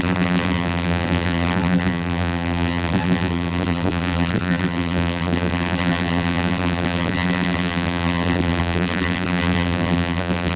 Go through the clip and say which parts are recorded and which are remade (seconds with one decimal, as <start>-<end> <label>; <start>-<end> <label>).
0.0-10.6 remade

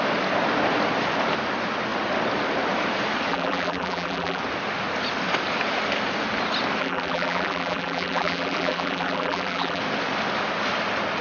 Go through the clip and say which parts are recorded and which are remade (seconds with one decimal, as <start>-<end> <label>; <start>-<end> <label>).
0.0-3.3 recorded; 3.3-4.4 remade; 4.4-6.8 recorded; 6.8-9.8 remade; 9.8-11.2 recorded

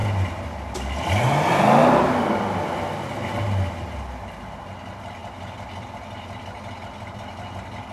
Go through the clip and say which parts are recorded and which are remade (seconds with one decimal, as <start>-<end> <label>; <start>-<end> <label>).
0.0-1.2 remade; 1.2-1.8 recorded; 1.8-4.1 remade; 4.1-5.2 recorded; 5.2-5.9 remade; 5.9-7.9 recorded

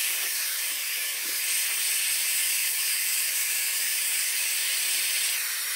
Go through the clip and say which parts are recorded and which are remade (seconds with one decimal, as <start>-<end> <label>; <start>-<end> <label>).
0.0-1.4 remade; 1.4-2.4 recorded; 2.4-4.5 remade; 4.5-5.8 recorded

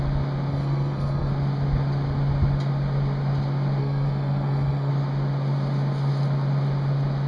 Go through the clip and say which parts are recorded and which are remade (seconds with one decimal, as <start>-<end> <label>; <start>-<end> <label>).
0.0-0.5 recorded; 0.5-1.3 remade; 1.3-3.8 recorded; 3.8-4.9 remade; 4.9-7.3 recorded

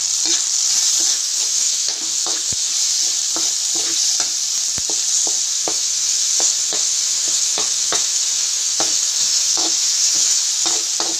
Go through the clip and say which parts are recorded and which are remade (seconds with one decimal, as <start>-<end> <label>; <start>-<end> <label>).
0.0-1.1 recorded; 1.1-2.7 remade; 2.7-5.5 recorded; 5.5-10.4 remade; 10.4-11.2 recorded